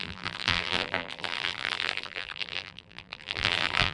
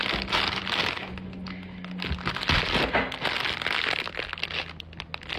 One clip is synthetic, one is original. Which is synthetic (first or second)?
first